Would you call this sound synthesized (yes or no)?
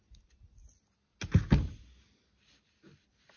no